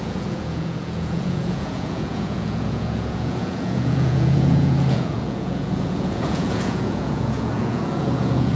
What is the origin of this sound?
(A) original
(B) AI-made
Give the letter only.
B